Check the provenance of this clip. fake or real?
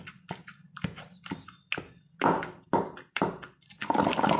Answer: real